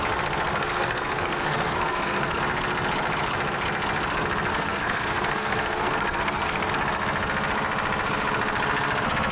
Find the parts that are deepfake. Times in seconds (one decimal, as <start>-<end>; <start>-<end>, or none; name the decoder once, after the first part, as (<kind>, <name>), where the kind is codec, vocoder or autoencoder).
0.5-2.4 (codec, SNAC); 4.5-6.7